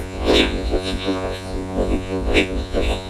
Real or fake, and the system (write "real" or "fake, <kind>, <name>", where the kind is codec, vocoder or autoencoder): fake, vocoder, Vocos